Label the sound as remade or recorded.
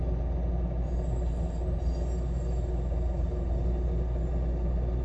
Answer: recorded